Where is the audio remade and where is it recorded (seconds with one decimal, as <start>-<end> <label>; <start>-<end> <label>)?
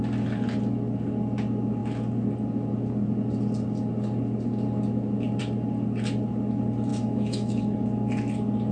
0.0-6.9 recorded; 6.9-7.6 remade; 7.6-8.7 recorded